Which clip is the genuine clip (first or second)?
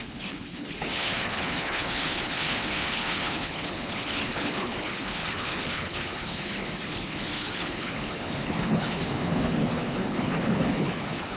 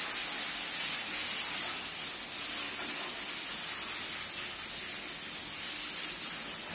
second